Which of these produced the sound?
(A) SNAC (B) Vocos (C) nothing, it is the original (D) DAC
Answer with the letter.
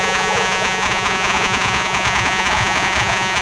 B